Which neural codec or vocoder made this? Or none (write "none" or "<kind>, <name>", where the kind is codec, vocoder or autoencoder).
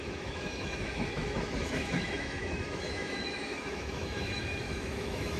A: autoencoder, DAC-VAE